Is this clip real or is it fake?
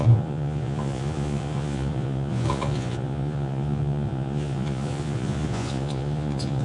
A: fake